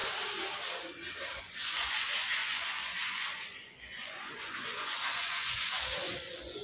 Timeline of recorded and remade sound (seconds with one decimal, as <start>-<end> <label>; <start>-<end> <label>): 0.0-1.4 recorded; 1.4-6.6 remade